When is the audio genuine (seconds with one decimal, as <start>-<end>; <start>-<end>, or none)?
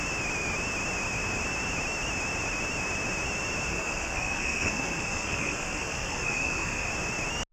0.0-3.7; 6.9-7.5